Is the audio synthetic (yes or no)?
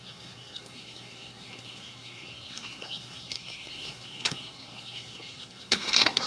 yes